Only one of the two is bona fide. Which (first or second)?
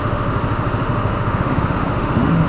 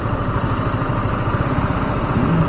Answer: second